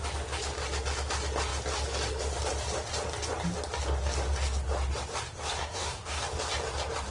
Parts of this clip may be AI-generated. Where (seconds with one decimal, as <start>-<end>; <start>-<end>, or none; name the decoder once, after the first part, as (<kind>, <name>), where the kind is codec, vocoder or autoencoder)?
5.6-6.2 (codec, SNAC)